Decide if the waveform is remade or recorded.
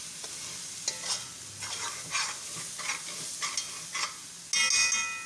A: recorded